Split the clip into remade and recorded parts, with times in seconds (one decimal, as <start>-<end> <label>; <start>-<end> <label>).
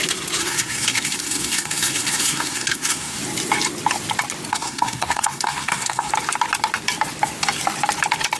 0.0-0.4 recorded; 0.4-3.2 remade; 3.2-4.5 recorded; 4.5-6.1 remade; 6.1-8.4 recorded